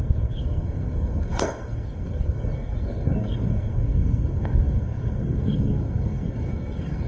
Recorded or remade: remade